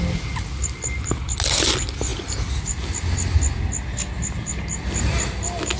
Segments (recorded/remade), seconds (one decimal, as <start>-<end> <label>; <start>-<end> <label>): 0.0-5.8 recorded